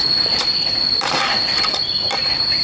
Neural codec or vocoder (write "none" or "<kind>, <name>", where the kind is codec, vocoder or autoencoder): vocoder, BigVGAN v2